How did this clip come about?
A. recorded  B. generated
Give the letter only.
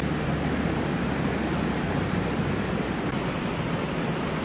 A